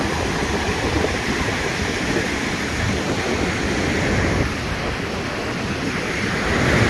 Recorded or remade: recorded